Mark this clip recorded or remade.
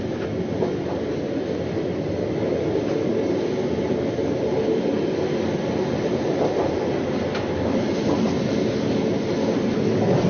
recorded